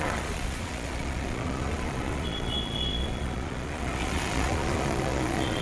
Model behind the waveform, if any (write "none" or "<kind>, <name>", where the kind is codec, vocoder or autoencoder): vocoder, Vocos